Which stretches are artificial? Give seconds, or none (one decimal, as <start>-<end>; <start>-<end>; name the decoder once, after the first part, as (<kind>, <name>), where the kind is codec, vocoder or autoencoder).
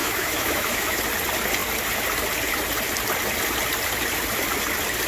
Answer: 0.0-1.0 (autoencoder, DAC-VAE)